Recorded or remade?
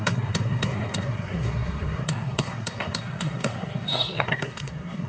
remade